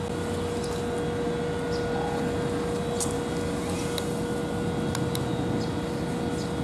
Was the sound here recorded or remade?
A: recorded